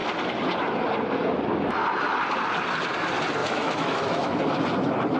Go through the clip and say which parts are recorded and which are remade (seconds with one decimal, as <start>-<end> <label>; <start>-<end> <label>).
0.0-3.4 recorded; 3.4-4.4 remade; 4.4-5.2 recorded